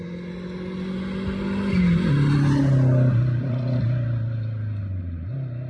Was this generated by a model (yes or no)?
no